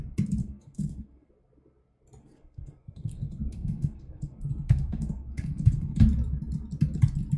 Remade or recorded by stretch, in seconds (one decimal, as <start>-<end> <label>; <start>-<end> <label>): 0.0-0.4 recorded; 0.4-1.3 remade; 1.3-2.2 recorded; 2.2-6.0 remade; 6.0-7.4 recorded